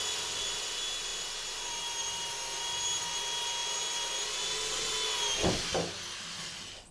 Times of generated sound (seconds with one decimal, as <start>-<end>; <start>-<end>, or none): none